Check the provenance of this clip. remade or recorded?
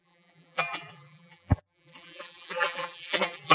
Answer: remade